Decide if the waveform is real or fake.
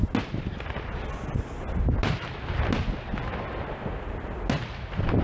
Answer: real